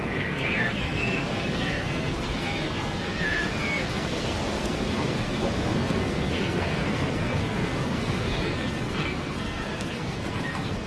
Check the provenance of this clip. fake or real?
fake